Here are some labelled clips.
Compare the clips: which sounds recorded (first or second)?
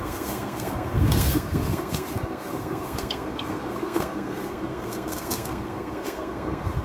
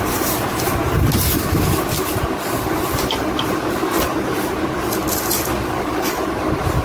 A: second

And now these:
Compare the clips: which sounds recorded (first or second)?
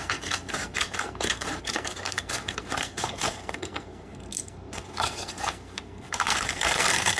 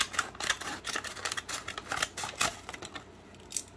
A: second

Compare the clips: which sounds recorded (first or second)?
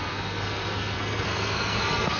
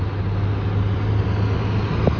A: second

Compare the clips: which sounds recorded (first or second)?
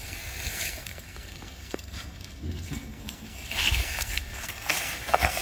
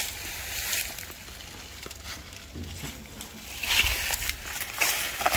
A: second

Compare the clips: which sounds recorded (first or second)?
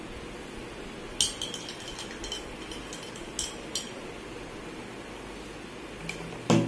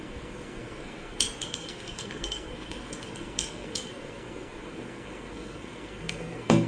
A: first